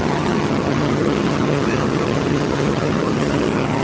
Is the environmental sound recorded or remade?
remade